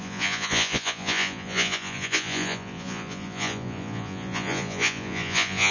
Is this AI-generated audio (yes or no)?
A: yes